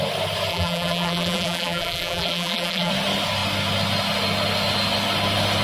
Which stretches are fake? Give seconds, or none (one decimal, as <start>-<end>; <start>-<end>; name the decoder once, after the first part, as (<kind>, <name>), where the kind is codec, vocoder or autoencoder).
0.5-2.9 (vocoder, BigVGAN v2)